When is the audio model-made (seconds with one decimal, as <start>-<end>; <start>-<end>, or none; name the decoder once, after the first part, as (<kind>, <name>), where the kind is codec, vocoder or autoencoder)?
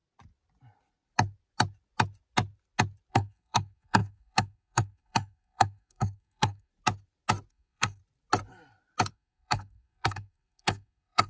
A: 3.1-6.7 (codec, SNAC); 7.5-8.0; 9.1-11.3